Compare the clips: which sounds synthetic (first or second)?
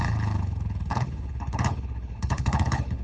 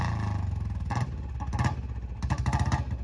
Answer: first